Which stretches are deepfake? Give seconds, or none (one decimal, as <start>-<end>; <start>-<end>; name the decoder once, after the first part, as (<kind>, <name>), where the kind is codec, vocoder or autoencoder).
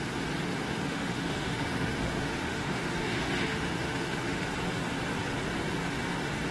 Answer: 0.6-4.5 (autoencoder, DAC-VAE)